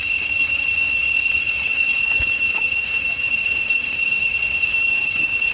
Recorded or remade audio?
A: remade